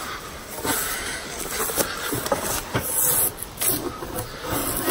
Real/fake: real